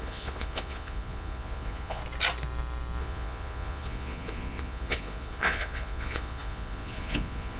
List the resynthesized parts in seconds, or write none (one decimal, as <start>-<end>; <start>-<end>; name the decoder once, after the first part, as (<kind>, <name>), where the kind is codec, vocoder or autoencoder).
0.0-2.0 (vocoder, Vocos); 3.0-7.6